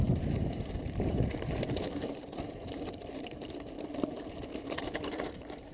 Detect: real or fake fake